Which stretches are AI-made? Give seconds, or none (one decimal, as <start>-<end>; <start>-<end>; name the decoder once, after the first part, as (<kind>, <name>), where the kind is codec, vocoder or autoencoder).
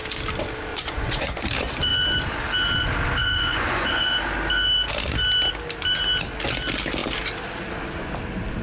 0.7-1.5 (vocoder, Vocos); 3.2-4.1